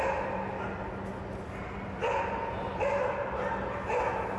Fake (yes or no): no